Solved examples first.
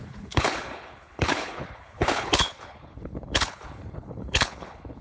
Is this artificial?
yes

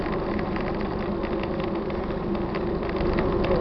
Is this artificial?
no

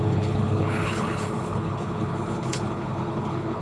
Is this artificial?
yes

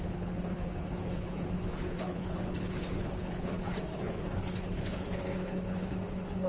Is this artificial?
yes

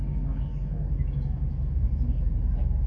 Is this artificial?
no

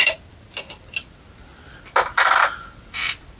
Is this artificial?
no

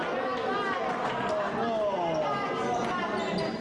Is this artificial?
no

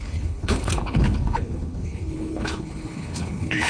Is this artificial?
yes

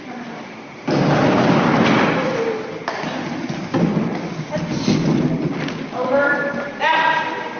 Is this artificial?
no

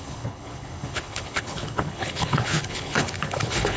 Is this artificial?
yes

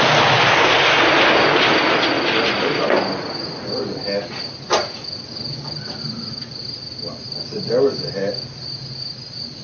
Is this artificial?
no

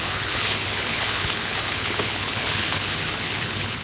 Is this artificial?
yes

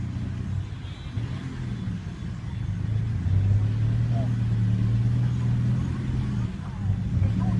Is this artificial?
no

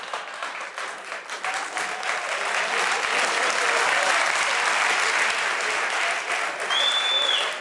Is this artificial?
no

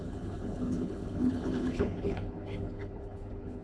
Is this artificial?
yes